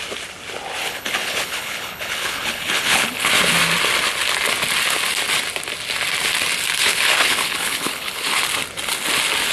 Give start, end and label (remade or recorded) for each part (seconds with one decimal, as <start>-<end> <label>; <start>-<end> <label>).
0.0-0.8 recorded; 0.8-3.3 remade; 3.3-6.8 recorded; 6.8-8.4 remade; 8.4-9.5 recorded